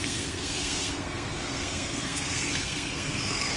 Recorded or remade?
remade